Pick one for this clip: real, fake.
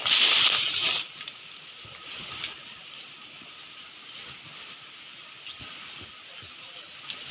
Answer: real